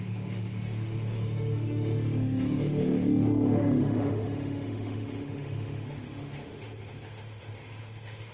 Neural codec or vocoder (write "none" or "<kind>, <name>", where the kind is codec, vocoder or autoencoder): autoencoder, DAC-VAE